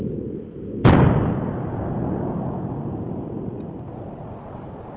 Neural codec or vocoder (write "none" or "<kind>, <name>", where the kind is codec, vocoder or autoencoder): vocoder, BigVGAN v2